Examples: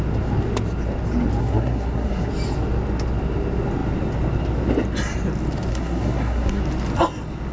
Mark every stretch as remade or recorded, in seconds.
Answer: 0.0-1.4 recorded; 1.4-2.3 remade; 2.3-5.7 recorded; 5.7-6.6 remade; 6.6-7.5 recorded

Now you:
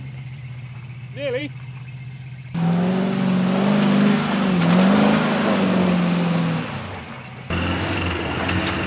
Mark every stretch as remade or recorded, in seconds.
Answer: 0.0-8.9 recorded

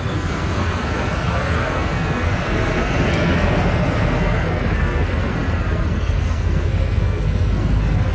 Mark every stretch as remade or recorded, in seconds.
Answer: 0.0-8.1 remade

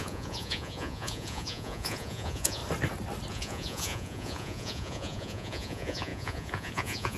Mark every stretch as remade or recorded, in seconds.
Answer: 0.0-2.6 remade; 2.6-3.3 recorded; 3.3-7.2 remade

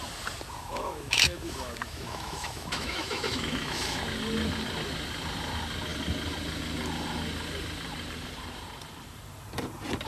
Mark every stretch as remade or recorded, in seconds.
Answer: 0.0-0.6 recorded; 0.6-4.0 remade; 4.0-10.1 recorded

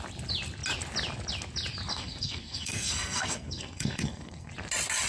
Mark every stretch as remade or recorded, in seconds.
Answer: 0.0-1.9 recorded; 1.9-4.5 remade; 4.5-5.1 recorded